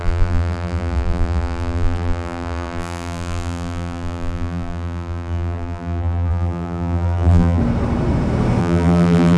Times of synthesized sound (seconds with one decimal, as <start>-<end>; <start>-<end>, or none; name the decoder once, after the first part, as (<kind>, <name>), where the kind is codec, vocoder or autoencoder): 0.0-7.6 (vocoder, BigVGAN v2); 8.6-9.4

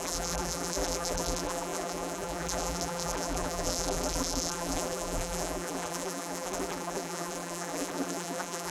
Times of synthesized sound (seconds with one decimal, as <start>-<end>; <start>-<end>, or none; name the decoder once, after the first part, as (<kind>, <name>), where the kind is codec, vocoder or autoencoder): 0.0-8.7 (vocoder, BigVGAN v2)

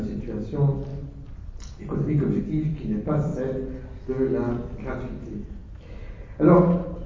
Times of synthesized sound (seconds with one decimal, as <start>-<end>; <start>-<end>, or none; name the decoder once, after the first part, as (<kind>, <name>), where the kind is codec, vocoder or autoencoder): none

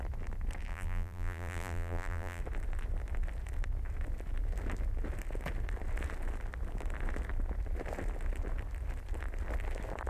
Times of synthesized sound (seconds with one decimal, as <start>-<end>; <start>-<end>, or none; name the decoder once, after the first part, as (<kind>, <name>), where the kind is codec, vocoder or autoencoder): 0.7-2.4 (vocoder, BigVGAN v2)

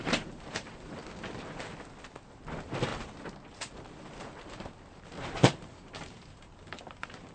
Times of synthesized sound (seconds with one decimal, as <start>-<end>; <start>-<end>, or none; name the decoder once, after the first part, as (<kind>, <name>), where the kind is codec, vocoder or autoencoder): 0.0-1.0 (vocoder, BigVGAN v2); 2.3-2.9; 3.7-7.3

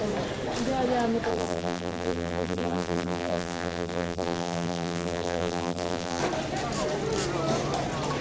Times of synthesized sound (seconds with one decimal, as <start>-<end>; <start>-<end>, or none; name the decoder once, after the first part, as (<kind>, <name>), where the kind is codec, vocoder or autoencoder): 1.3-6.2 (vocoder, BigVGAN v2)

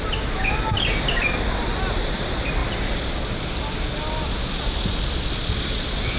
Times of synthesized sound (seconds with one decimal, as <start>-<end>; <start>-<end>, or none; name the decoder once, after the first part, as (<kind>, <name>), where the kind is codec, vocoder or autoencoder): none